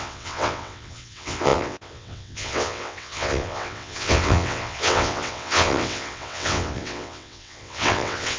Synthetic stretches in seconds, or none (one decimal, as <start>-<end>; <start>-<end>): 0.0-8.4